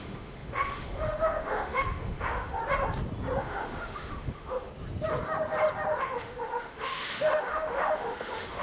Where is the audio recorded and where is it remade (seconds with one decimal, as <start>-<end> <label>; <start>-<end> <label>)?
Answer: 0.0-2.6 remade; 2.6-3.4 recorded; 3.4-4.7 remade; 4.7-6.0 recorded; 6.0-8.6 remade